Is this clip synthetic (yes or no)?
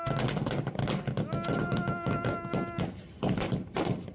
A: no